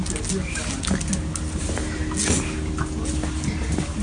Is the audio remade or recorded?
recorded